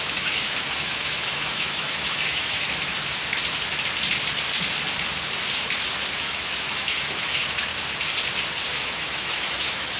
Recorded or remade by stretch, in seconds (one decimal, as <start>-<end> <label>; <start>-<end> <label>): 0.0-2.9 remade; 2.9-6.1 recorded; 6.1-7.7 remade; 7.7-8.7 recorded; 8.7-10.0 remade